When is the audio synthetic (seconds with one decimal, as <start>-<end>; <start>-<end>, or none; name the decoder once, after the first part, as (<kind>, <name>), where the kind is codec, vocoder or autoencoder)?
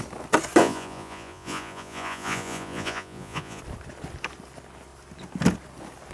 0.6-3.6 (vocoder, Vocos)